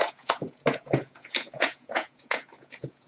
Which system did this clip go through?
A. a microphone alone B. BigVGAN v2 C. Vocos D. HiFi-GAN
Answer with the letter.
C